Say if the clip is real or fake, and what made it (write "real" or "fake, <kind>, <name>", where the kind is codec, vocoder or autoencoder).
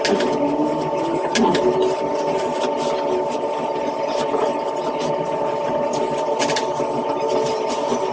real